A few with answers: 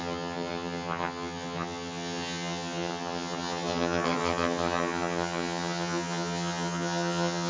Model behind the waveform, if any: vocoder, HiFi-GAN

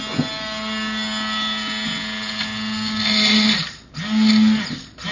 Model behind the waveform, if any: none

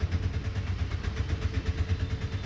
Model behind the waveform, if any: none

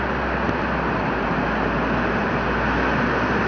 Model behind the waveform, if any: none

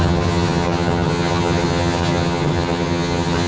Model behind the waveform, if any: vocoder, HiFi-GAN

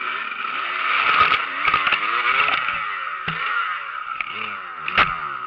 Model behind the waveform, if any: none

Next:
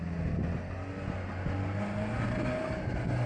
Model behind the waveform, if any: none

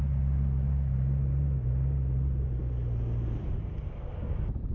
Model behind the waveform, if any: none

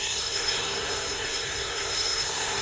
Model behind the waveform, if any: codec, SNAC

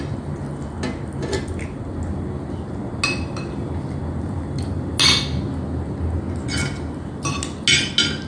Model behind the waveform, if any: none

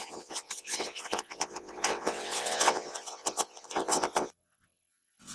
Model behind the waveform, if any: vocoder, WaveNeXt